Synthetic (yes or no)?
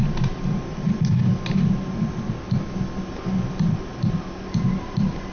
no